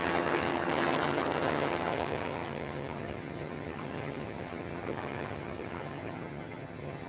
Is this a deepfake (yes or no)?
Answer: yes